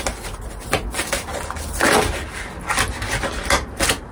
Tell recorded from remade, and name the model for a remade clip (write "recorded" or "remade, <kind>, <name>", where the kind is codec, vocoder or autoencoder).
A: recorded